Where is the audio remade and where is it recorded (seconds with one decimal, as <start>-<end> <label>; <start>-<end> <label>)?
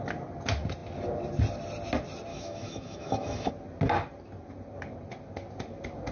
0.0-2.3 recorded; 2.3-3.5 remade; 3.5-6.1 recorded